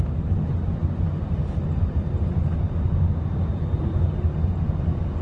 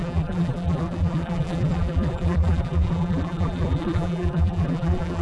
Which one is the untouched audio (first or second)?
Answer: first